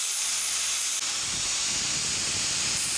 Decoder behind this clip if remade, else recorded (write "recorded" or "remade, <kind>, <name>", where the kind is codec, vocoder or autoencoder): recorded